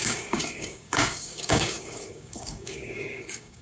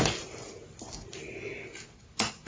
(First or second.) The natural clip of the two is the second